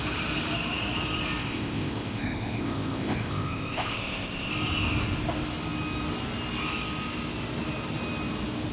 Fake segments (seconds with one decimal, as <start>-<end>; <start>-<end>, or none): 1.4-4.5